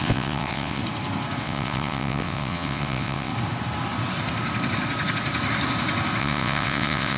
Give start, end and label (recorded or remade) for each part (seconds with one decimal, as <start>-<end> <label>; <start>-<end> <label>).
0.0-0.8 remade; 0.8-1.4 recorded; 1.4-3.3 remade; 3.3-6.2 recorded; 6.2-7.2 remade